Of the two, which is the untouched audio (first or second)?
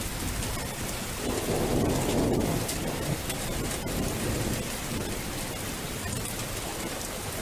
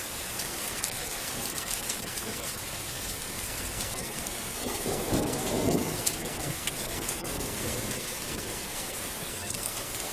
first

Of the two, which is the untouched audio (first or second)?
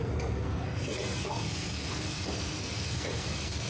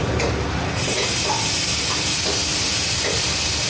second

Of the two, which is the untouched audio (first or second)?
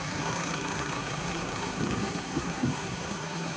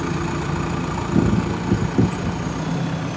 second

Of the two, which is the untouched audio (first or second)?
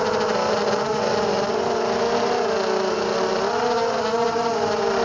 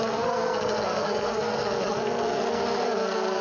first